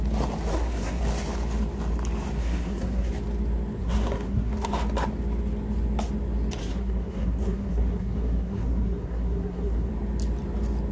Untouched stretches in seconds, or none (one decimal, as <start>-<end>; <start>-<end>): 0.0-0.5; 1.0-2.4; 3.1-3.8; 4.7-6.6; 9.9-10.9